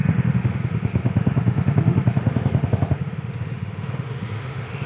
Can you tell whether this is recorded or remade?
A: remade